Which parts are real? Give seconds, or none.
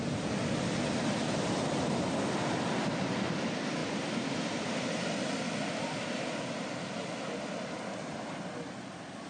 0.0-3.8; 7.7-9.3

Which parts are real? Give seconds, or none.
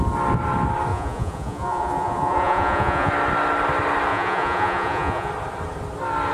0.0-0.9; 3.1-4.1; 5.3-6.3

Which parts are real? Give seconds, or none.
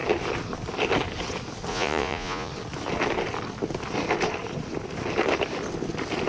0.0-1.7; 2.5-6.3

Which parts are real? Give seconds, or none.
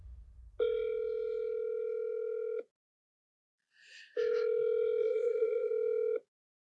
0.0-5.0; 5.7-6.6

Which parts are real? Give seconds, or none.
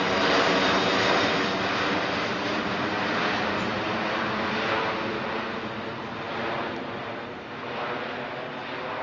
0.0-9.0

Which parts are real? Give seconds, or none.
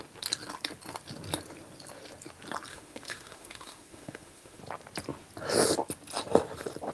0.0-2.7; 4.6-6.9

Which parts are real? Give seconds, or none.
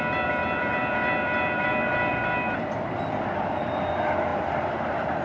none